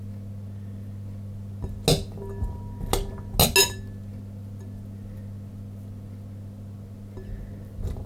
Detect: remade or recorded recorded